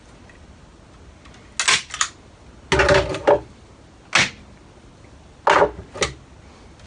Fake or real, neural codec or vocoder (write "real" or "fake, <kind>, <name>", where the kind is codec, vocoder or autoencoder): real